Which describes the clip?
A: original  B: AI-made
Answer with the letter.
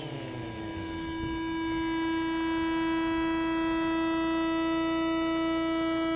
A